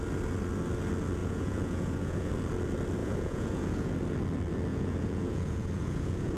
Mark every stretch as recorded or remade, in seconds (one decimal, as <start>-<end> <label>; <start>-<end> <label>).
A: 0.0-1.2 recorded; 1.2-2.3 remade; 2.3-3.0 recorded; 3.0-3.9 remade; 3.9-4.7 recorded; 4.7-6.4 remade